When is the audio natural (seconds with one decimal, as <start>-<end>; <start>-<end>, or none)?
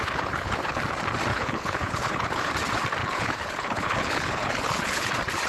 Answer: 0.8-1.3; 2.5-3.0; 5.1-5.5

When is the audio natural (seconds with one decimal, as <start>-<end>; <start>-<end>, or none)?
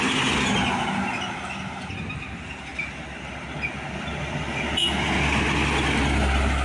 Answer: 0.0-6.6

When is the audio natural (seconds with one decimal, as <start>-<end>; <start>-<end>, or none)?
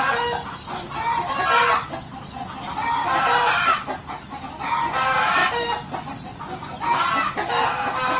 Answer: 0.0-8.2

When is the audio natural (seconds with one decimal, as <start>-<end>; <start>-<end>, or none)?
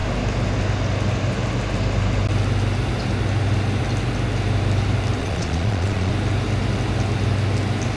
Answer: 0.0-5.2; 6.1-8.0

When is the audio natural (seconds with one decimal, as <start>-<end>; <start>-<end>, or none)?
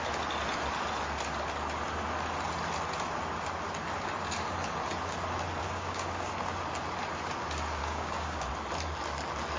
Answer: 0.0-5.6; 6.3-7.8; 8.5-9.6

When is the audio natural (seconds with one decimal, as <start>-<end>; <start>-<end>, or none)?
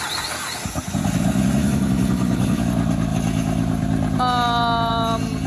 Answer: 0.0-1.6; 2.6-5.5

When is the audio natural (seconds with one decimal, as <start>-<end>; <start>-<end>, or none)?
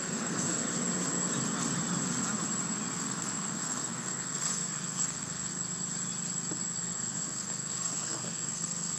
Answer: 0.6-3.0; 5.5-6.8